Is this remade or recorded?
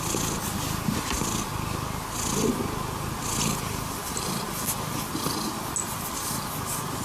recorded